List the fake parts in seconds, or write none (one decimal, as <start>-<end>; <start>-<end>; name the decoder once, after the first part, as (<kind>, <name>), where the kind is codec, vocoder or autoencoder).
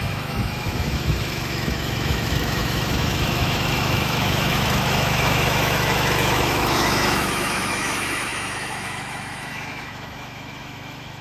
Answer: 0.0-11.2 (autoencoder, DAC-VAE)